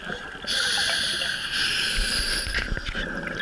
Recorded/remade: recorded